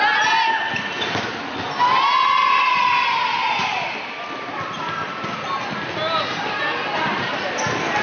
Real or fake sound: real